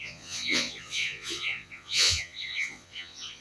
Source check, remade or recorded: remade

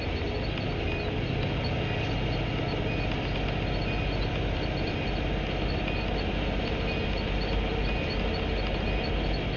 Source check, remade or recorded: recorded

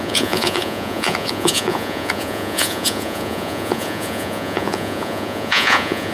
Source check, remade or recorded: remade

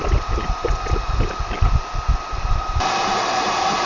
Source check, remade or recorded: recorded